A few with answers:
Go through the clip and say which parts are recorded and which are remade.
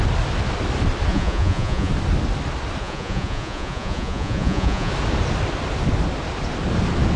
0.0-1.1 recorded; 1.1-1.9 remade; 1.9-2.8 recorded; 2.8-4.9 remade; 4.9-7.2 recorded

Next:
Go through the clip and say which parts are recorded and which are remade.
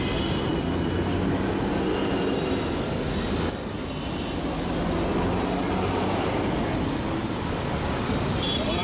0.0-8.8 recorded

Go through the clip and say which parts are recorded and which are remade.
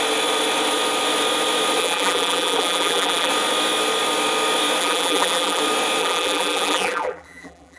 0.0-1.8 recorded; 1.8-3.3 remade; 3.3-4.8 recorded; 4.8-5.6 remade; 5.6-6.0 recorded; 6.0-7.8 remade